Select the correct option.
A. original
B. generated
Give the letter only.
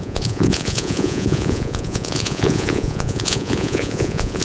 B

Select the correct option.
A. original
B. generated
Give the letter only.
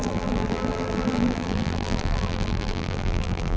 B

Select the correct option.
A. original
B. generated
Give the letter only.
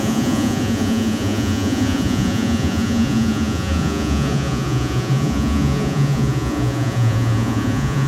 B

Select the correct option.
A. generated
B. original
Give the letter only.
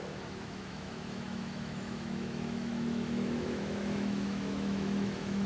A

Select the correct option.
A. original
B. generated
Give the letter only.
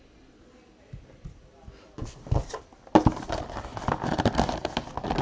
A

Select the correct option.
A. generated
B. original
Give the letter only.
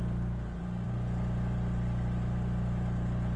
A